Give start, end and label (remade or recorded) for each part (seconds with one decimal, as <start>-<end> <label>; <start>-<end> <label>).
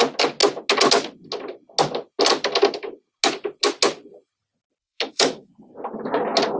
0.0-4.8 recorded; 4.8-5.5 remade; 5.5-6.6 recorded